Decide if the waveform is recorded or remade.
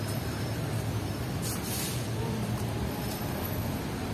remade